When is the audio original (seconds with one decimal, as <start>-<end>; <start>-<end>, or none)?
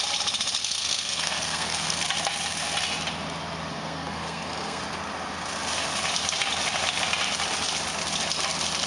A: 0.0-0.6; 2.0-3.7; 4.8-8.9